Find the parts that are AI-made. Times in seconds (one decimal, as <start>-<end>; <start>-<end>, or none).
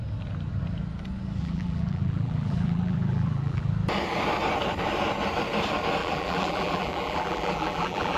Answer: 1.4-3.7; 6.0-8.2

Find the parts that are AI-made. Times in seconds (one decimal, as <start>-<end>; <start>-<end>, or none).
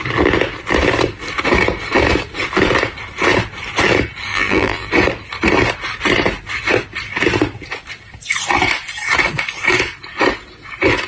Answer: 4.3-4.9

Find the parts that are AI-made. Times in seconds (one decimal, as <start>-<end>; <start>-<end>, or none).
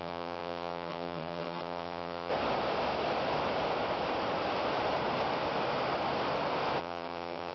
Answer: 0.0-2.3; 6.8-7.5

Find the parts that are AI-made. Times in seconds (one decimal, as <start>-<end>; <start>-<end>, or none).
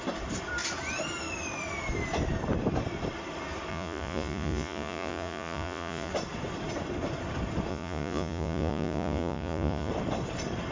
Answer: 3.7-6.1; 7.7-9.9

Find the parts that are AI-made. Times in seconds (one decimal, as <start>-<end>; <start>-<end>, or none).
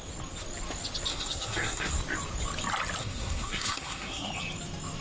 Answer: 1.1-1.9; 3.0-4.3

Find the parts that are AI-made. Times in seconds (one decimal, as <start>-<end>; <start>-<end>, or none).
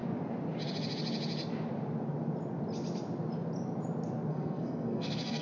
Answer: 4.3-5.4